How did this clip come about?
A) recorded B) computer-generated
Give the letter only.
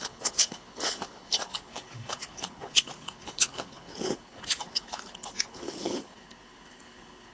B